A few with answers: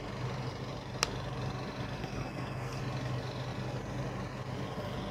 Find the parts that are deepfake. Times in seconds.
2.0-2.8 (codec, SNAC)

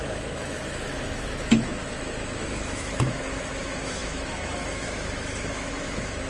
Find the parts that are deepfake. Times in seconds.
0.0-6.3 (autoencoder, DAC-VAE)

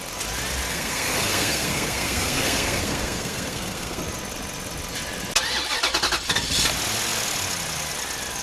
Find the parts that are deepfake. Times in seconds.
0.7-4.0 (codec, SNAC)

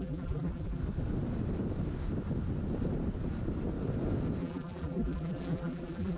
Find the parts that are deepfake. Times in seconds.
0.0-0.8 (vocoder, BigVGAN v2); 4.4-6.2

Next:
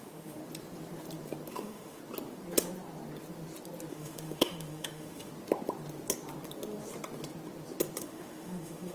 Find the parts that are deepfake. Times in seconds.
0.0-0.4 (autoencoder, DAC-VAE); 1.5-2.0; 3.9-5.3; 8.0-8.9

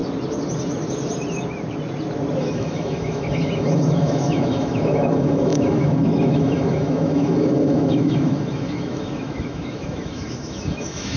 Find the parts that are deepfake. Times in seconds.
2.4-11.2 (autoencoder, DAC-VAE)

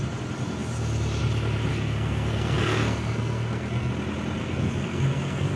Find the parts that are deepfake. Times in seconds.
1.7-3.9 (codec, SNAC); 4.4-5.6

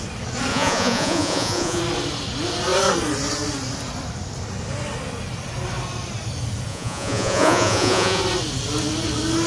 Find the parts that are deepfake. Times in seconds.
0.5-1.8 (vocoder, Vocos); 6.7-8.2